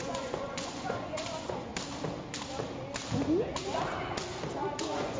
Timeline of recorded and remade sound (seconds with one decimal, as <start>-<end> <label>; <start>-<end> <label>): 0.0-1.7 remade; 1.7-4.8 recorded; 4.8-5.2 remade